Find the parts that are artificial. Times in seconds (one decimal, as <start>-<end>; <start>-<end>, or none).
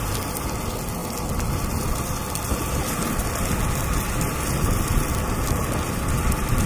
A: none